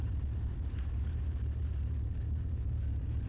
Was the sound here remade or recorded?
remade